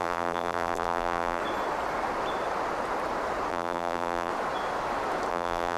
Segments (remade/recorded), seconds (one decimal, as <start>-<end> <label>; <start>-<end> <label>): 0.0-1.4 remade; 1.4-3.5 recorded; 3.5-4.3 remade; 4.3-5.3 recorded; 5.3-5.8 remade